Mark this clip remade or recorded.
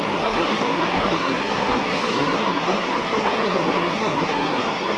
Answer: remade